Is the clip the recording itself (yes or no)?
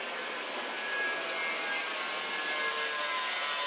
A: yes